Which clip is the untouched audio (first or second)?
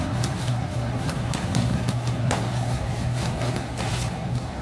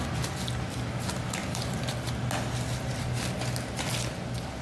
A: second